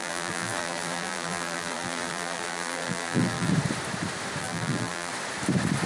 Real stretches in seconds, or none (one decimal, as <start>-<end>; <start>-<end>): 3.5-4.4; 5.1-5.9